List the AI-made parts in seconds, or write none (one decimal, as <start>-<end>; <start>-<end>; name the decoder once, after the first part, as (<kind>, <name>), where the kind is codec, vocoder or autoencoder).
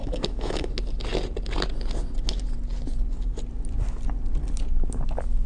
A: 0.0-0.7 (autoencoder, DAC-VAE)